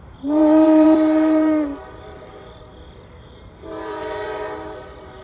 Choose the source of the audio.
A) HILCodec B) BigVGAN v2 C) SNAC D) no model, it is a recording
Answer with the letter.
B